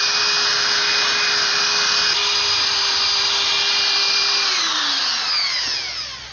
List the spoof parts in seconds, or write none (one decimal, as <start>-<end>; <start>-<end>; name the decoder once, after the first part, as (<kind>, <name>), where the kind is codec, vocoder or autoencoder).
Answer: none